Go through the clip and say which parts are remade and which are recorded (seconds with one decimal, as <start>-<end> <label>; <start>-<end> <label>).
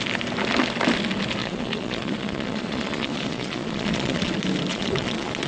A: 0.0-1.4 recorded; 1.4-4.3 remade; 4.3-4.7 recorded; 4.7-5.5 remade